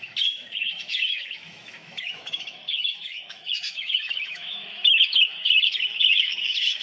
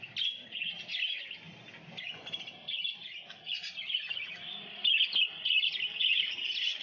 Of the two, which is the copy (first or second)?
first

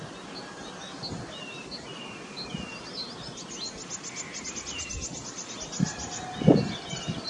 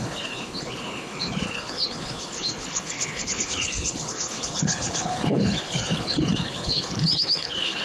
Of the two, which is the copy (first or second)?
second